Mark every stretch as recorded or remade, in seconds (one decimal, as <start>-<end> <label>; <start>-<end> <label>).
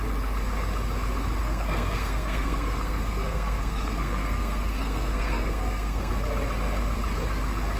0.0-1.4 recorded; 1.4-6.1 remade; 6.1-7.8 recorded